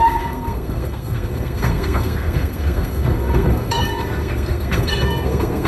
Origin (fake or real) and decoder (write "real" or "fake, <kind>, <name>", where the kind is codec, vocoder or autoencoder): fake, codec, SNAC